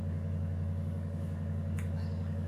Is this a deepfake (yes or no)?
yes